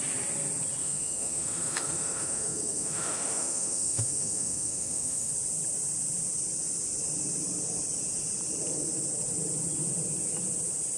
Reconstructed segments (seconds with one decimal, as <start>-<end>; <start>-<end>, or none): 0.8-5.3